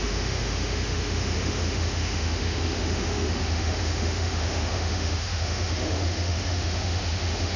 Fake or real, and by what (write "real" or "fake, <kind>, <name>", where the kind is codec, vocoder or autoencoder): fake, autoencoder, DAC-VAE